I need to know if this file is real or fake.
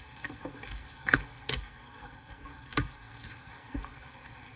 fake